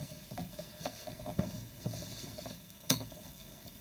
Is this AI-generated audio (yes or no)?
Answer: yes